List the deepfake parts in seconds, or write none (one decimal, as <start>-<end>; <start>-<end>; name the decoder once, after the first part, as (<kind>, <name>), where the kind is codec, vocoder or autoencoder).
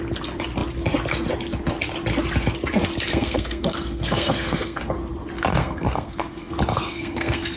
3.1-4.8 (codec, SNAC); 5.5-6.5; 6.9-7.6